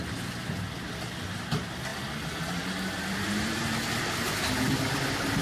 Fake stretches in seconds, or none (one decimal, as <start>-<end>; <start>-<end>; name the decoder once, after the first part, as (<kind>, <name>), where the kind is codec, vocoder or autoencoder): 1.9-5.4 (vocoder, BigVGAN v2)